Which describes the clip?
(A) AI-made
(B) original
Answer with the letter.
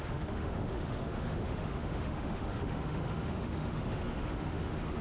A